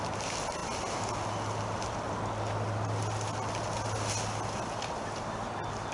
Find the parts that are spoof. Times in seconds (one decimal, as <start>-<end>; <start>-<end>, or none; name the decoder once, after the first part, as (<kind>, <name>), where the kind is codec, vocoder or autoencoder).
none